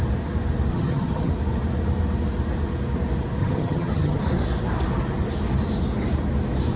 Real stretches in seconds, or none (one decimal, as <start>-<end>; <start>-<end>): 0.0-0.7; 1.3-3.4; 4.2-6.8